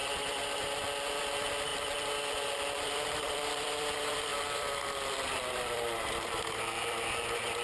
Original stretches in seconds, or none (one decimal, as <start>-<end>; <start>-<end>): 0.0-1.2; 1.7-2.3